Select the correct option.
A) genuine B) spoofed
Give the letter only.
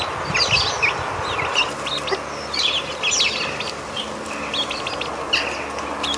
A